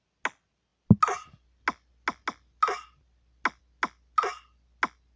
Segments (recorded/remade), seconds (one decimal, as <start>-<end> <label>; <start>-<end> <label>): 0.0-5.2 recorded